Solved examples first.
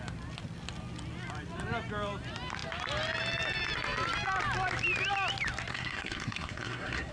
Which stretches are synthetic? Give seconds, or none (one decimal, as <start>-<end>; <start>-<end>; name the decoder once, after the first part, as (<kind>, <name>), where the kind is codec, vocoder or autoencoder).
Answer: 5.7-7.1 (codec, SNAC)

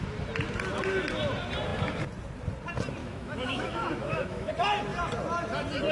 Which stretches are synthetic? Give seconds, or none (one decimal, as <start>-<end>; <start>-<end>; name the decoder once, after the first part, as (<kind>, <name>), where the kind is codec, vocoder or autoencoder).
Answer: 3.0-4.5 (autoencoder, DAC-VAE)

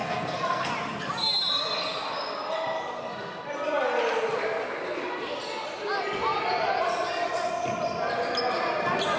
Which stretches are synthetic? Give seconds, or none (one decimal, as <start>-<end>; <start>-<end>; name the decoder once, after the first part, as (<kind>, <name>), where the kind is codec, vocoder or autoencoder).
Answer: 0.0-0.7 (codec, SNAC)

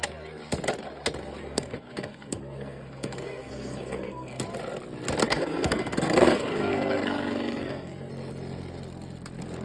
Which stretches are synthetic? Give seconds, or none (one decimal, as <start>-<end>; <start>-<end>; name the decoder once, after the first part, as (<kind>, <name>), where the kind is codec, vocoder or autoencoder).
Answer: 1.4-4.4 (codec, SNAC); 5.2-8.1

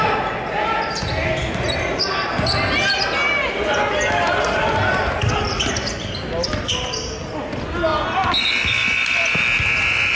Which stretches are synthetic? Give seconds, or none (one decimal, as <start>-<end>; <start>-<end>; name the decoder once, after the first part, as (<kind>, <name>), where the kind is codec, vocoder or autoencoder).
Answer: none

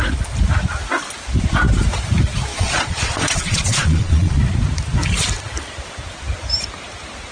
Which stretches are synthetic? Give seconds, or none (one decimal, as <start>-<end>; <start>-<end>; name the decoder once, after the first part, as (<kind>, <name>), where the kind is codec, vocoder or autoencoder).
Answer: 2.5-4.4 (vocoder, Vocos)